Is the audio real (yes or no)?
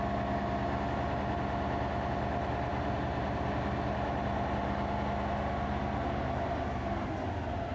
yes